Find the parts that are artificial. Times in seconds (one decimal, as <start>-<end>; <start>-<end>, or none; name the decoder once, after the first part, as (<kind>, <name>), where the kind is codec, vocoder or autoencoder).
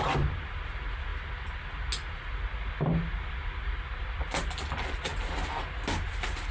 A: none